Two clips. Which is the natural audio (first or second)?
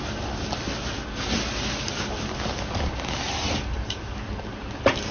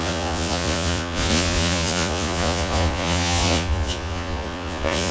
first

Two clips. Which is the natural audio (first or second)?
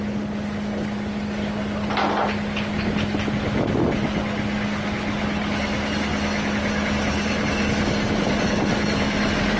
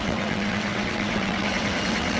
first